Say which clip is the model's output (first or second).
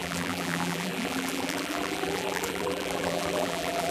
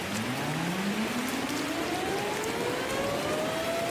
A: first